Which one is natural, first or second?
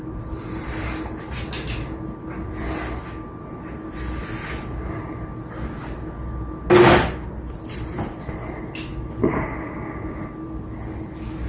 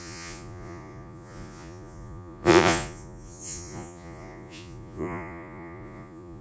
first